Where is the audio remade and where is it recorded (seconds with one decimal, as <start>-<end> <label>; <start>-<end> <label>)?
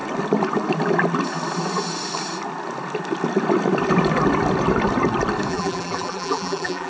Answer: 0.0-5.5 recorded; 5.5-6.9 remade